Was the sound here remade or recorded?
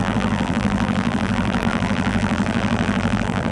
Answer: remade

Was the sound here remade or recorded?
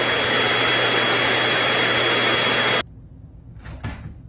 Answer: recorded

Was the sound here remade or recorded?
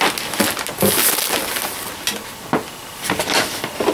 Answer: recorded